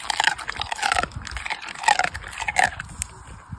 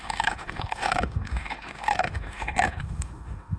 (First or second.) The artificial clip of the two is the second